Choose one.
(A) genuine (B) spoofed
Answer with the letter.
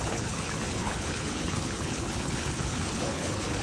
B